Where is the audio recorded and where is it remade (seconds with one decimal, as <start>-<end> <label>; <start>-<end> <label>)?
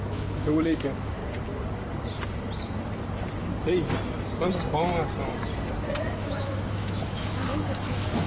0.0-1.2 remade; 1.2-6.0 recorded; 6.0-8.3 remade